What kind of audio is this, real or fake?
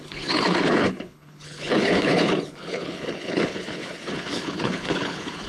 fake